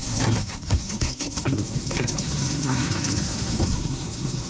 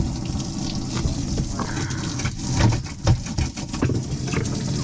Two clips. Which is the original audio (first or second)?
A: second